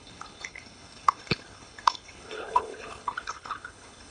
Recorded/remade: remade